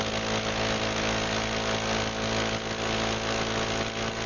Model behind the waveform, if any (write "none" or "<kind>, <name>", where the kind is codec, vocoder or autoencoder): none